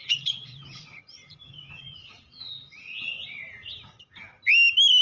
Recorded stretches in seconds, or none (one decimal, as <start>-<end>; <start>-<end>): 3.0-5.0